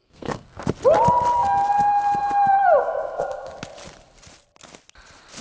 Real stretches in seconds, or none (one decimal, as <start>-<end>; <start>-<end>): 0.6-2.8; 3.5-5.4